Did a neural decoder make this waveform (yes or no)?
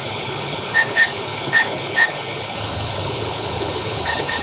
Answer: yes